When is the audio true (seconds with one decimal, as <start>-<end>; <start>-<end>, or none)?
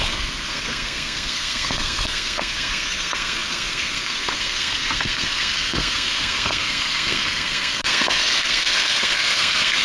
none